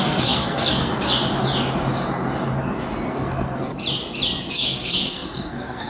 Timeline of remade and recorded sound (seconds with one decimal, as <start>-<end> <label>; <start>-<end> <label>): 0.0-1.2 remade; 1.2-3.1 recorded; 3.1-3.7 remade; 3.7-4.5 recorded; 4.5-5.9 remade